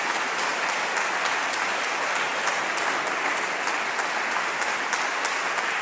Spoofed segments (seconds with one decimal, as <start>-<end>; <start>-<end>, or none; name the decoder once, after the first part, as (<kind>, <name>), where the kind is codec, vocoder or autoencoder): none